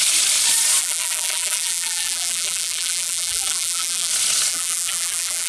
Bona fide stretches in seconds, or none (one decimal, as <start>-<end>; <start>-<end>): 0.0-0.8; 4.1-4.5